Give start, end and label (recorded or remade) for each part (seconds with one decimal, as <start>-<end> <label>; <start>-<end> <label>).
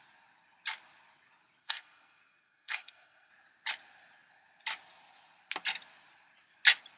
0.0-1.6 recorded; 1.6-3.3 remade; 3.3-7.0 recorded